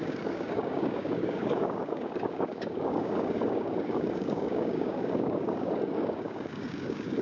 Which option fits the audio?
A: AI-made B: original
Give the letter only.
A